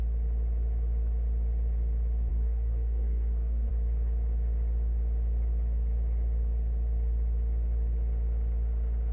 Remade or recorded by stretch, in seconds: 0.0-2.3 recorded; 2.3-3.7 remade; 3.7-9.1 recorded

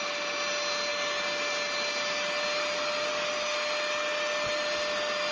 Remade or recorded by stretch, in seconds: 0.0-5.3 recorded

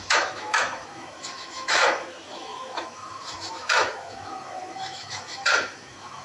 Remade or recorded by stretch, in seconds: 0.0-6.2 remade